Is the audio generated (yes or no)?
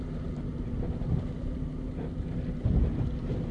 no